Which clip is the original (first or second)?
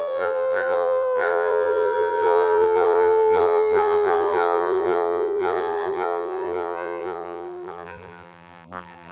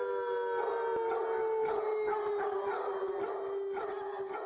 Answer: second